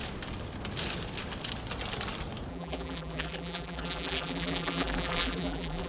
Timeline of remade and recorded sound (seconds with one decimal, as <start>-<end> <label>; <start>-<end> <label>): 0.0-2.5 recorded; 2.5-5.9 remade